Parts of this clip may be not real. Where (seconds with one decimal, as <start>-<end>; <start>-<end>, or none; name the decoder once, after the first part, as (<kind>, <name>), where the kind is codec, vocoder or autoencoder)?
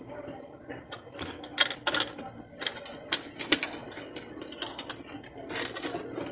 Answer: 3.8-4.9 (vocoder, BigVGAN v2)